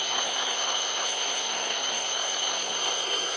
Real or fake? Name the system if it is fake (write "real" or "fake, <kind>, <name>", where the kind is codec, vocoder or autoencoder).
fake, codec, SNAC